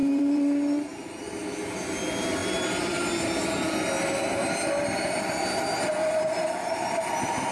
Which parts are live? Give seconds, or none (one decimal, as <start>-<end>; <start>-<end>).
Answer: 1.3-6.0; 7.1-7.5